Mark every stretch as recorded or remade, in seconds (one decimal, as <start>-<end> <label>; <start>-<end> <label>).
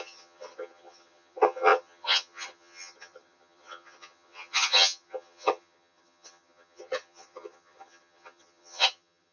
0.0-9.3 remade